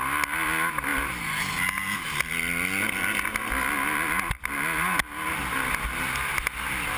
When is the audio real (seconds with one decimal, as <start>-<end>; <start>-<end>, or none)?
0.0-7.0